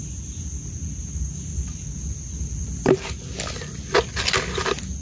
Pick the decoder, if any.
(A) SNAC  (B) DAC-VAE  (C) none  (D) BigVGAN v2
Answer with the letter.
C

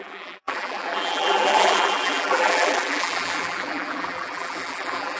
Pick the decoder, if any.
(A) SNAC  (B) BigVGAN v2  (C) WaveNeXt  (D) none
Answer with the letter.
B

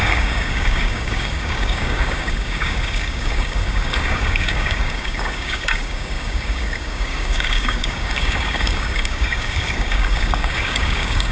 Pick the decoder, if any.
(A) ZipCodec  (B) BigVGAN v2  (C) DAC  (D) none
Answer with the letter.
C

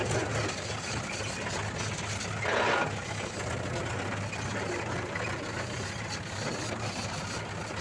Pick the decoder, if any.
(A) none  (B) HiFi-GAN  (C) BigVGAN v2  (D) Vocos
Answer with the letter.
A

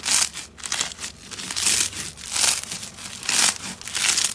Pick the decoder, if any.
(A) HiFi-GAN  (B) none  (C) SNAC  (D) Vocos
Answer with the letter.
B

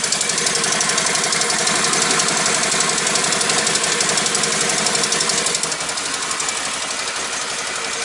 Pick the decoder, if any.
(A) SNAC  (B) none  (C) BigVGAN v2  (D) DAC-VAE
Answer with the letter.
B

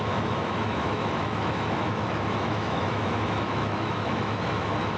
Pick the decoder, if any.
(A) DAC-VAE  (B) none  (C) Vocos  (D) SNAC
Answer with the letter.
A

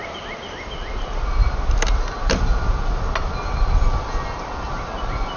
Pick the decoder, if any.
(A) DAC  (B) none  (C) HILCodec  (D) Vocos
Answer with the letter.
B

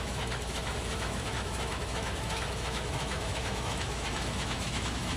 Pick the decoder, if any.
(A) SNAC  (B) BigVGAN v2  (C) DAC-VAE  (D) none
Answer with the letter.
C